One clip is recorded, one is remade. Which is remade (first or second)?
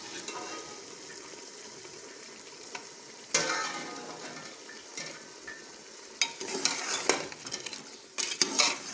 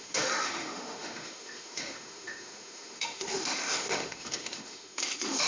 second